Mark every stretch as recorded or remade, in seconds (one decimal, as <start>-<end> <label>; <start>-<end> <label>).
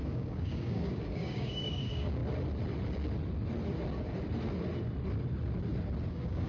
0.0-2.2 remade; 2.2-6.1 recorded; 6.1-6.5 remade